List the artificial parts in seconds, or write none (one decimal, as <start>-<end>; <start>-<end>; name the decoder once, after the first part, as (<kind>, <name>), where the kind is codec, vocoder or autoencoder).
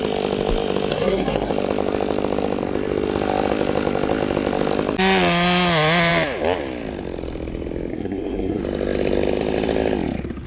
0.9-1.5 (codec, SNAC); 7.9-8.6